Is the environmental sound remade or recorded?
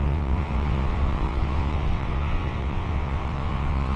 remade